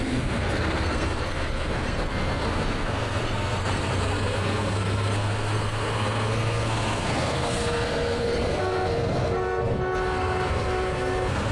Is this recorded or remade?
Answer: remade